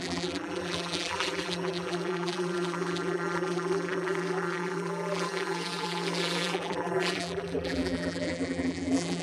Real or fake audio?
fake